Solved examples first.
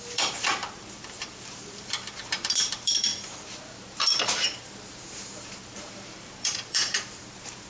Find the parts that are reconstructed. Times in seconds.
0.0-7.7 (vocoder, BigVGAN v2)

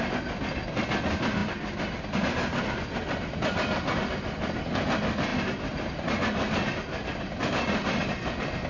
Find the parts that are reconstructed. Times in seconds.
none

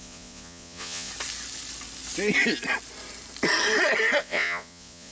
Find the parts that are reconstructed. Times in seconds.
0.0-1.1 (vocoder, Vocos); 4.2-5.1

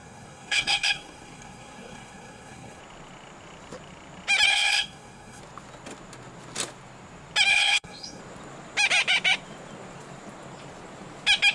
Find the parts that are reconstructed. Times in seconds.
0.0-2.8 (codec, SNAC); 4.5-5.4; 7.5-8.2

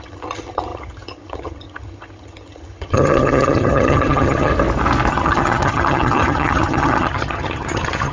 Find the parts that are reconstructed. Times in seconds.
0.0-4.5 (vocoder, HiFi-GAN); 5.1-8.1

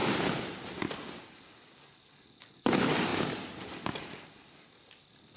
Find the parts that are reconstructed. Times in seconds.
none